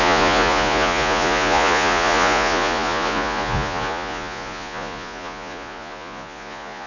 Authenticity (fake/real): fake